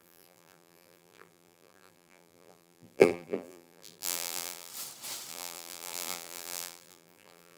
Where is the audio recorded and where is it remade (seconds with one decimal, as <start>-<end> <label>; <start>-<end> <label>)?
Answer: 0.0-4.7 remade; 4.7-5.3 recorded; 5.3-7.6 remade